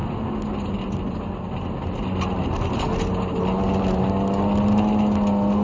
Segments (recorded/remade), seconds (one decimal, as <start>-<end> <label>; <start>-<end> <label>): 0.0-5.6 recorded